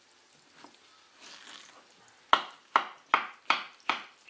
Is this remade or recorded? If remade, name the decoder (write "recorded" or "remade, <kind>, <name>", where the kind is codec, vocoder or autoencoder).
recorded